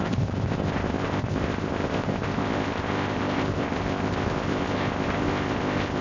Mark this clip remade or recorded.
remade